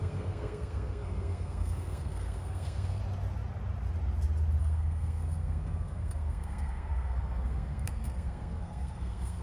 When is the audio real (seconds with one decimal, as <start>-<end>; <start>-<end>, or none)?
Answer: 3.0-4.6